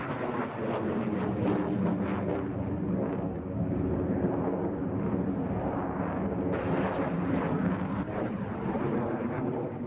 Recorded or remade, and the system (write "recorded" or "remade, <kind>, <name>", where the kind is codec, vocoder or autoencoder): recorded